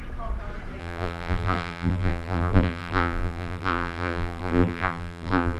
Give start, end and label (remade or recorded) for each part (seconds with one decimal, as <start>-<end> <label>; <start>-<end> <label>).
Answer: 0.0-0.8 recorded; 0.8-5.6 remade